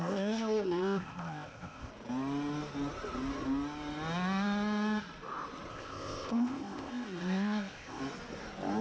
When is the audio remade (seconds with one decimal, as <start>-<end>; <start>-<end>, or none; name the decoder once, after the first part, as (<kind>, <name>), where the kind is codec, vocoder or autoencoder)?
0.0-1.9 (codec, ZipCodec); 5.7-8.0